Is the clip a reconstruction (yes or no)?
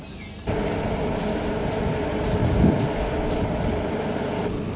no